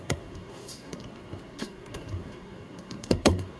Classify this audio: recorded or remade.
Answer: remade